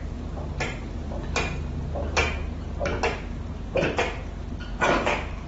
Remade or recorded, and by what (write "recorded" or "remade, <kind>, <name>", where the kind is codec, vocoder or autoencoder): recorded